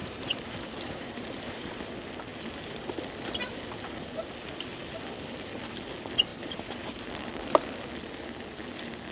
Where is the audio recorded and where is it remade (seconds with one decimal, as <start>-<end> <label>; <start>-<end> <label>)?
0.0-1.8 remade; 1.8-6.3 recorded; 6.3-7.0 remade; 7.0-9.1 recorded